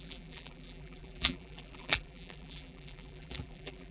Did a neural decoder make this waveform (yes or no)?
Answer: yes